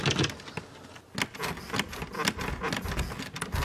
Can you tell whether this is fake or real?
real